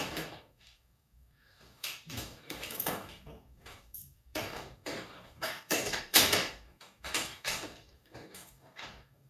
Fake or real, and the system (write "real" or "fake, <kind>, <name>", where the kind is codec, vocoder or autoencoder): fake, codec, DAC